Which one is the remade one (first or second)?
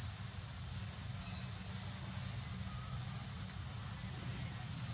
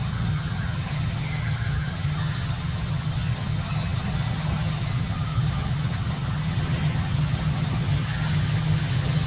second